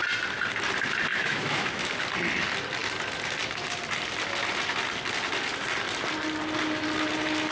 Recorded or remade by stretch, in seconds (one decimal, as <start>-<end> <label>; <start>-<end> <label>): 0.0-1.1 recorded; 1.1-1.9 remade; 1.9-7.5 recorded